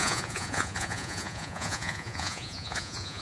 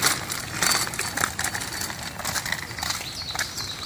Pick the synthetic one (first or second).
first